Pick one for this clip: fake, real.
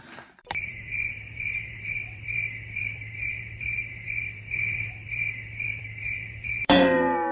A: fake